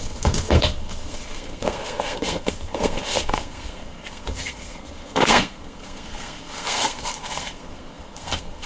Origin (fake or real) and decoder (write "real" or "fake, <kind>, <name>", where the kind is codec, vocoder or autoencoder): fake, codec, SNAC